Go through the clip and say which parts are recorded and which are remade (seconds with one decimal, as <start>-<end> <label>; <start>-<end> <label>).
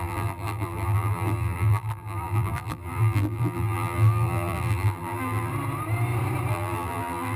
0.0-5.5 remade; 5.5-6.5 recorded; 6.5-7.4 remade